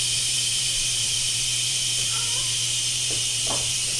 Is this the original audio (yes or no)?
no